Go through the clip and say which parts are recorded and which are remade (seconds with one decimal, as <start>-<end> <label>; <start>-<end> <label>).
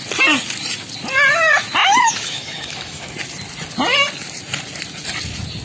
0.0-1.8 recorded; 1.8-3.1 remade; 3.1-5.6 recorded